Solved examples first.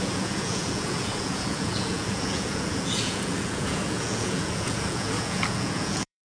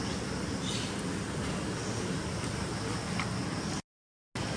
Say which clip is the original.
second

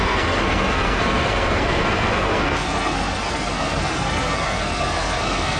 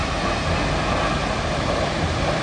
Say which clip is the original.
second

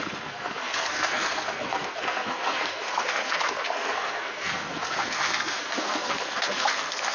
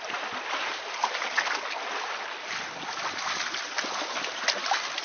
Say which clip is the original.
second